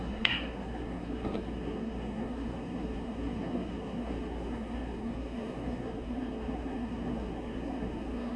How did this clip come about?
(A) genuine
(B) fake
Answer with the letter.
B